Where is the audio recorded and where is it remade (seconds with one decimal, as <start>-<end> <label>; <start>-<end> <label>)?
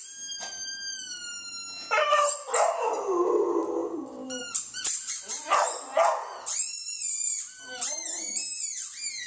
0.0-9.3 recorded